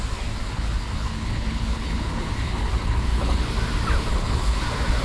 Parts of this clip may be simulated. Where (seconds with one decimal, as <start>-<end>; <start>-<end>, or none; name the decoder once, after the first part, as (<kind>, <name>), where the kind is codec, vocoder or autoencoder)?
0.4-3.4 (codec, HILCodec); 4.1-4.6